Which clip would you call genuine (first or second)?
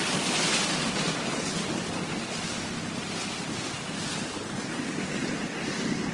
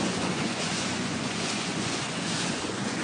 first